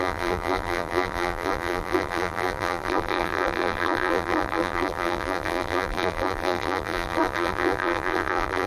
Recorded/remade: remade